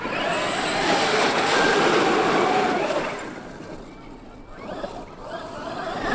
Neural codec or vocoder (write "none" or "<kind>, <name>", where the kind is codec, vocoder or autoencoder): none